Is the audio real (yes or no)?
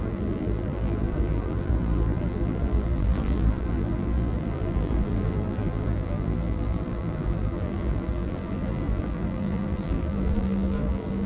no